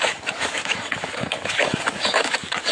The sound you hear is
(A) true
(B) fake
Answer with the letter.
B